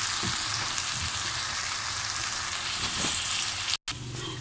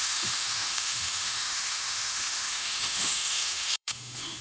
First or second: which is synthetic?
second